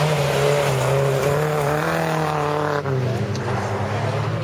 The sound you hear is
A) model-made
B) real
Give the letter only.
B